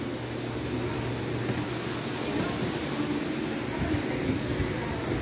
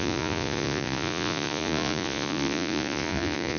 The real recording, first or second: first